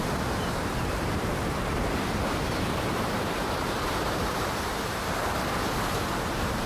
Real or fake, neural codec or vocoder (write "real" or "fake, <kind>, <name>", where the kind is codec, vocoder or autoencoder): fake, vocoder, BigVGAN v2